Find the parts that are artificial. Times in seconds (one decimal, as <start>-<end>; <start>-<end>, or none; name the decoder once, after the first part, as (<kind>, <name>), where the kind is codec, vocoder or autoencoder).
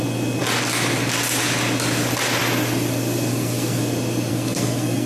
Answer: 3.3-3.8 (codec, SNAC); 4.3-5.1